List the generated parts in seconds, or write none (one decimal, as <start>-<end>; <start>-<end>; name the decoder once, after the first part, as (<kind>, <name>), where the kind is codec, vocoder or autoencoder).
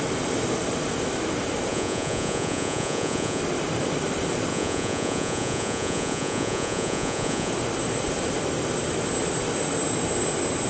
1.7-3.4 (vocoder, Vocos); 4.5-7.5